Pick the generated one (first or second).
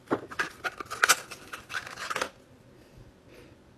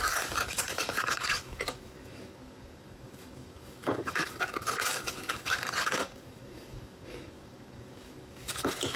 second